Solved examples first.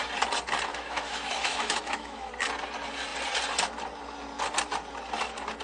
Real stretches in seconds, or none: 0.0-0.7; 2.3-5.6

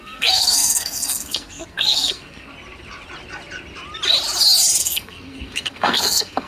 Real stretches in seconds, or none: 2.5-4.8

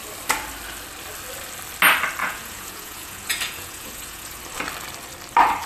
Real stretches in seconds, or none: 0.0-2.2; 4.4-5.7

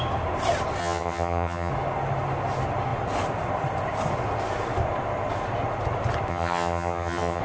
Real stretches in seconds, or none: 0.0-0.8; 1.7-6.3